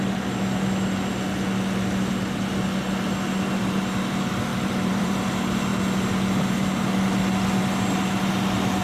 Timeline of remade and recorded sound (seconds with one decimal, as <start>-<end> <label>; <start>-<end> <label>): 0.0-4.5 recorded; 4.5-5.3 remade; 5.3-8.8 recorded